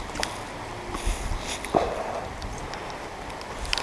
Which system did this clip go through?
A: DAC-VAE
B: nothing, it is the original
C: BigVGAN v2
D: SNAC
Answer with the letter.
B